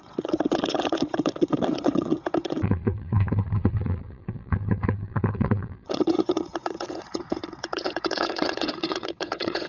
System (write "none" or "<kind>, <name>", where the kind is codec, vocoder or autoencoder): vocoder, WaveNeXt